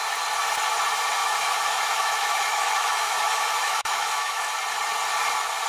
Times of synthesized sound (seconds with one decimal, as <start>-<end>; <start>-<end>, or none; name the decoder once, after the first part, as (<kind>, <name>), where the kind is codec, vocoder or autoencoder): 1.2-4.6 (autoencoder, DAC-VAE)

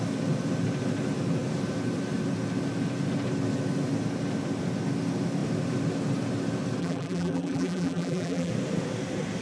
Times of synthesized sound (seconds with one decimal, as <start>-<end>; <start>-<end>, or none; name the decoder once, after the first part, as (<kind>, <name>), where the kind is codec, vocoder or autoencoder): 6.8-8.5 (vocoder, BigVGAN v2)